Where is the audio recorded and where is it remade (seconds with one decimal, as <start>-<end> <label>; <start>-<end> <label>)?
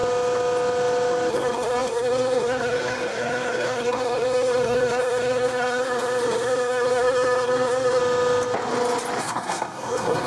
0.0-1.3 recorded; 1.3-8.0 remade; 8.0-9.2 recorded; 9.2-10.3 remade